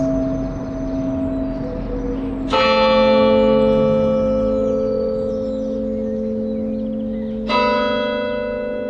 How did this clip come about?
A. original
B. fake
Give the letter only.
A